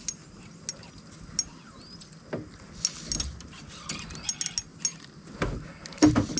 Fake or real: real